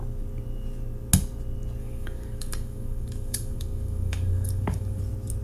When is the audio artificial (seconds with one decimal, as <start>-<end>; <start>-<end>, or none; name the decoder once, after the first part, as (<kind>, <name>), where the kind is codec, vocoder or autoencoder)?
1.8-5.0 (codec, DAC)